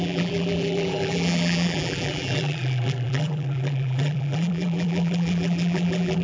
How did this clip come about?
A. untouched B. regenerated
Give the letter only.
B